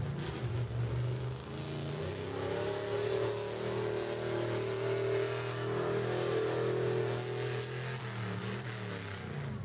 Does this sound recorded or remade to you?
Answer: recorded